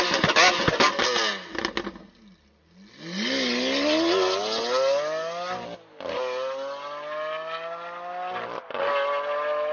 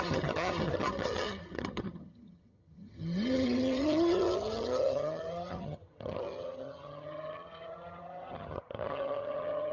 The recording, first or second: first